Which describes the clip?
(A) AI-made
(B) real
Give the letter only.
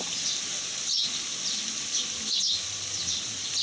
B